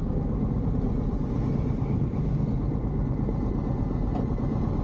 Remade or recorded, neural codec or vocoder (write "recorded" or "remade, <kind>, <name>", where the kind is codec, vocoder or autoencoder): recorded